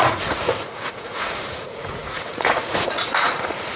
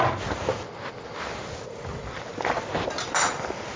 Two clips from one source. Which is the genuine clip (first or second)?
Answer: second